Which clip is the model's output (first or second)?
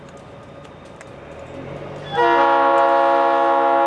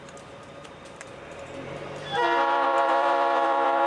second